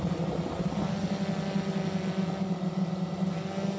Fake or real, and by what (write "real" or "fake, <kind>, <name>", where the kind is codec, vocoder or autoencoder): real